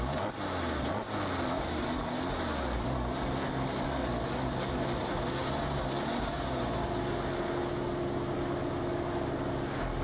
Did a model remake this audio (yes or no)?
no